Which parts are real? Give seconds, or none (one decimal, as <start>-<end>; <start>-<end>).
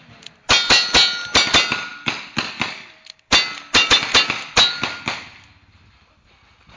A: 0.0-6.8